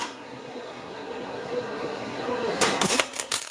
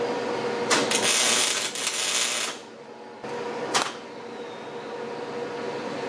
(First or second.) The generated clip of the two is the first